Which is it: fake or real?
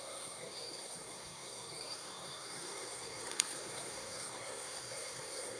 fake